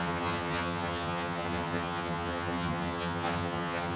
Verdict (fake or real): fake